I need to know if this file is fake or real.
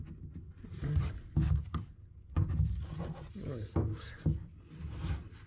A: real